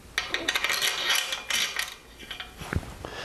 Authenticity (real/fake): real